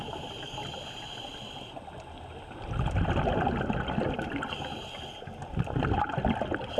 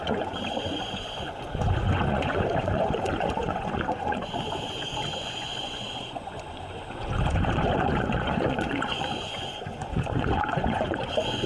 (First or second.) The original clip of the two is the first